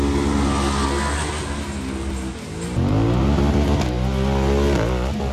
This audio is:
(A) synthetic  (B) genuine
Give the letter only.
B